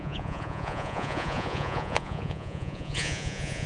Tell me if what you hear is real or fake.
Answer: fake